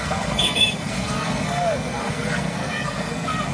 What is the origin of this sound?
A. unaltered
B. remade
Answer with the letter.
B